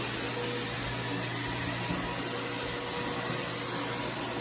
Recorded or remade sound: recorded